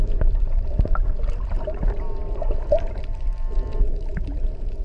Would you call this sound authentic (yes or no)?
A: yes